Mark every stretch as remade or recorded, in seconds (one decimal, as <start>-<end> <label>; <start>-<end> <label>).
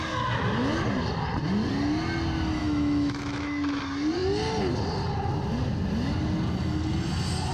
0.0-2.6 recorded; 2.6-3.8 remade; 3.8-7.5 recorded